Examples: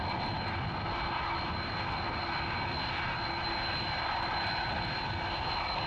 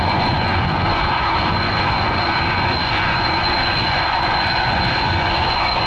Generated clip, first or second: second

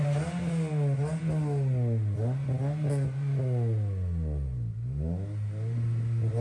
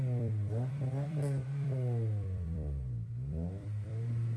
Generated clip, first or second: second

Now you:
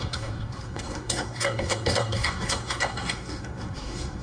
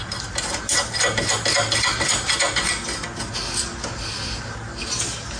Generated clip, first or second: first